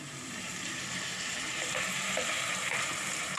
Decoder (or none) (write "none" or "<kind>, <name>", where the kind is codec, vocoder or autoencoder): vocoder, BigVGAN v2